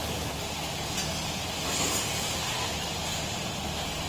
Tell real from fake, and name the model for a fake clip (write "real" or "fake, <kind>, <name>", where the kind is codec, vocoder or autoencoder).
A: real